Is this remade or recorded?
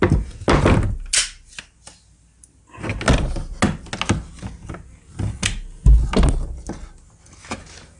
recorded